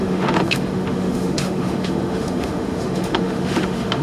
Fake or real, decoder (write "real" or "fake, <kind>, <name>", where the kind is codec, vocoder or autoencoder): fake, autoencoder, DAC-VAE